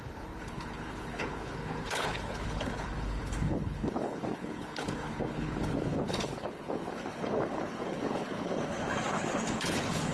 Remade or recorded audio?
remade